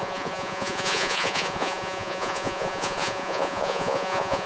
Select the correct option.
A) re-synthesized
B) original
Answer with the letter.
A